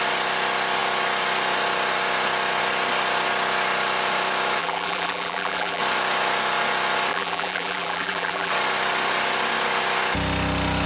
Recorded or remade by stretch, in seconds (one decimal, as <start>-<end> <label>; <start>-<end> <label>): 0.0-4.6 recorded; 4.6-5.8 remade; 5.8-7.1 recorded; 7.1-8.5 remade; 8.5-10.9 recorded